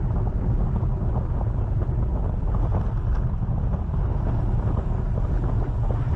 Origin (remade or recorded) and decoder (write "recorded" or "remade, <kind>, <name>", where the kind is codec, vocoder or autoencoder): recorded